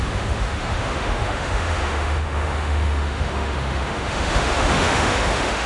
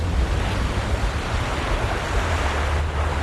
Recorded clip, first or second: second